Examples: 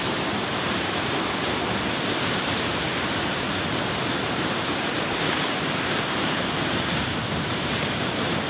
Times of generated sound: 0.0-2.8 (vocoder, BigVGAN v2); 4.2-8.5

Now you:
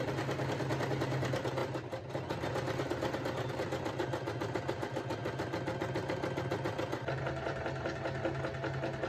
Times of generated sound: none

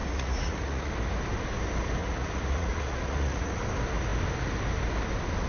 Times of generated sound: 0.0-0.9 (vocoder, Vocos); 2.0-3.6

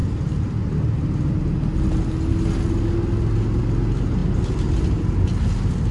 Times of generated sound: none

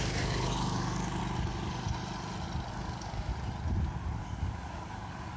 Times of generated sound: 0.0-1.2 (codec, DAC); 2.7-3.3; 4.2-5.4

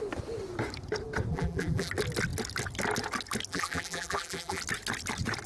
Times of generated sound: 1.3-1.9 (vocoder, BigVGAN v2); 3.5-4.6

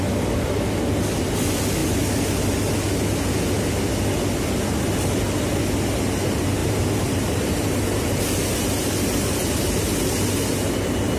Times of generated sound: 6.6-8.2 (vocoder, BigVGAN v2)

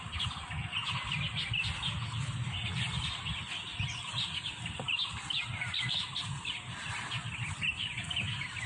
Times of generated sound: none